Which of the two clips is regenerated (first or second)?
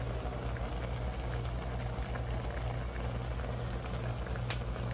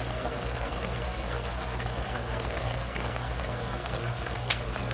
second